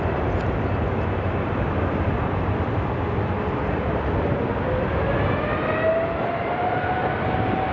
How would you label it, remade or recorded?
recorded